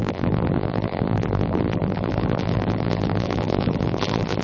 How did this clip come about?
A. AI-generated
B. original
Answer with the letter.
A